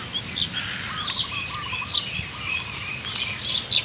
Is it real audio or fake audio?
real